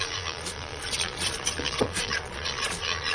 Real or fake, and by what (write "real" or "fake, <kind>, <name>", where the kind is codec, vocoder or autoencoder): fake, vocoder, Vocos